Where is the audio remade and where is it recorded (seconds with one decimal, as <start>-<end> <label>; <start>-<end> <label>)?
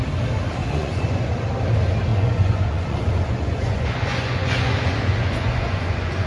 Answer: 0.0-0.6 recorded; 0.6-1.3 remade; 1.3-2.1 recorded; 2.1-6.3 remade